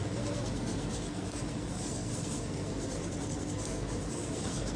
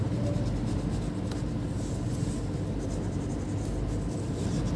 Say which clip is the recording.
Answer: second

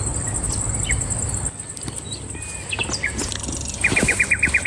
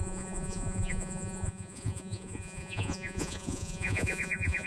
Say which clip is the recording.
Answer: first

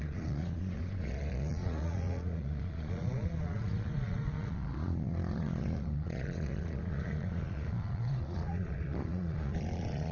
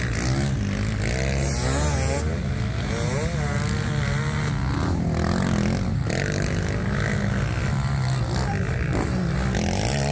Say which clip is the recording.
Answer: second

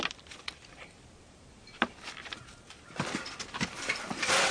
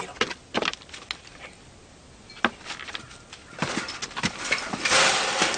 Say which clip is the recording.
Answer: second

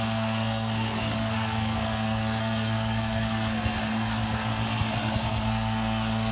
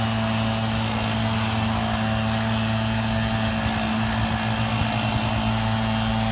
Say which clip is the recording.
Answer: second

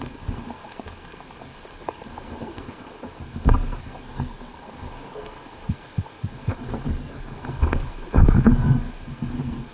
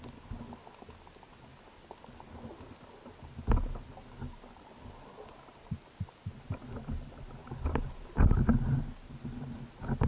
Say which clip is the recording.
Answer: second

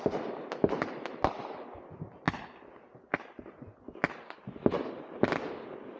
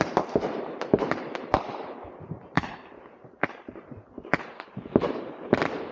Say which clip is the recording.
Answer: first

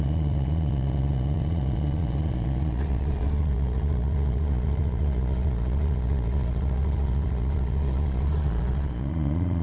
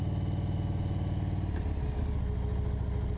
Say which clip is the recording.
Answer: second